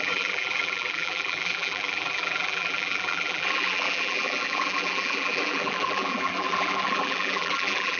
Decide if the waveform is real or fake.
fake